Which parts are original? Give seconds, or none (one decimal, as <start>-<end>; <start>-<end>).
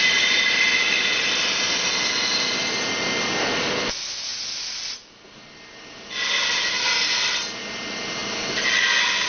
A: 0.0-9.3